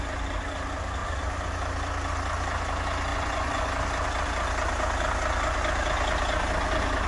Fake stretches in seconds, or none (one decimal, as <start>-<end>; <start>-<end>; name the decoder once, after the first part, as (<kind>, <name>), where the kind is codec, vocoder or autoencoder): 3.1-3.7 (vocoder, Vocos)